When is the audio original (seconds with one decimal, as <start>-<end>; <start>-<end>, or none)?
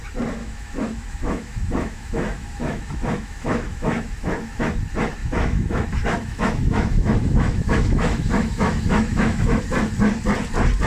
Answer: 0.0-0.4; 4.6-5.2; 9.6-10.9